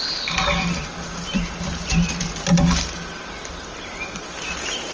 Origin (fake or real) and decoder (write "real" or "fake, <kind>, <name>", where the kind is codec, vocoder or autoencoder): real